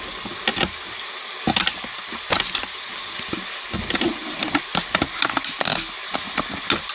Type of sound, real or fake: real